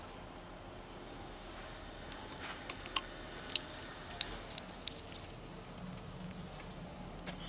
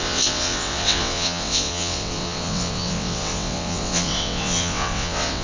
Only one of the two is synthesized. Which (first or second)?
second